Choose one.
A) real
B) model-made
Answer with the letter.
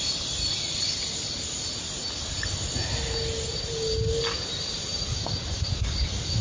A